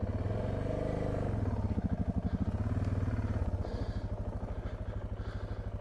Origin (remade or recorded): recorded